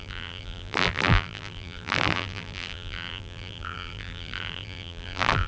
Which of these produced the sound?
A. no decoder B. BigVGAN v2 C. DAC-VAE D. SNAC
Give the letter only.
B